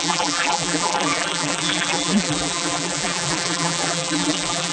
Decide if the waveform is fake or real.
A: fake